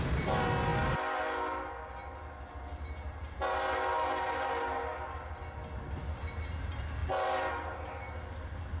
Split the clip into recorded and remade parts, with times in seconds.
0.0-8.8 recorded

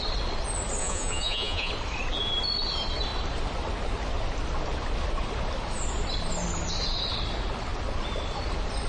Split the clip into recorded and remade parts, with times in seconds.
0.0-0.8 recorded; 0.8-1.7 remade; 1.7-8.9 recorded

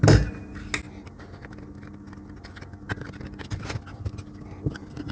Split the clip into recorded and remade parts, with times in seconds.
0.0-5.1 recorded

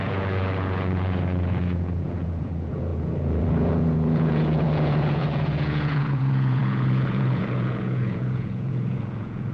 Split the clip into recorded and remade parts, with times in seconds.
0.0-9.5 remade